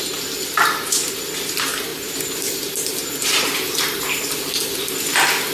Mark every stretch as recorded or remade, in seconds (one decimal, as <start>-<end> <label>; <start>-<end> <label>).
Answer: 0.0-1.9 recorded; 1.9-2.7 remade; 2.7-5.5 recorded